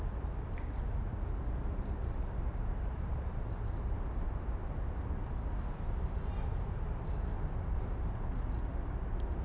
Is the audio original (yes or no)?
yes